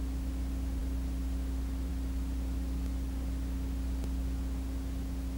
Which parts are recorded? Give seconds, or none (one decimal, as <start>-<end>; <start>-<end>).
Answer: 0.0-5.4